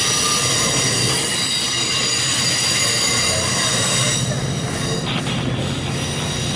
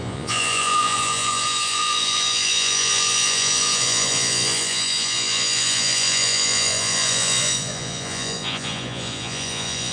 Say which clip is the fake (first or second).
second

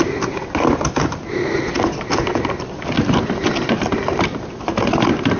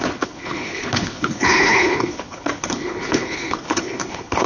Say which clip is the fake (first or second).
second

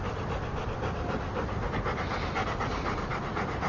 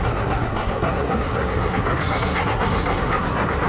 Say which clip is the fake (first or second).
second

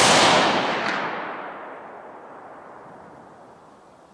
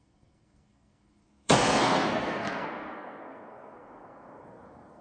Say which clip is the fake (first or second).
second